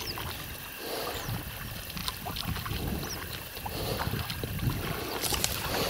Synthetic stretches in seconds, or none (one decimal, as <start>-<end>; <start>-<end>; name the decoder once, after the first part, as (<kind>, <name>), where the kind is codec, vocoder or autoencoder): none